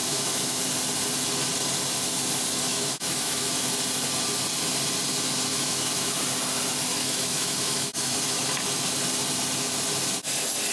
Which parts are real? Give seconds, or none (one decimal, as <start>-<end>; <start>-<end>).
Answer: 0.6-2.7; 3.5-5.5; 6.2-6.9; 8.5-10.7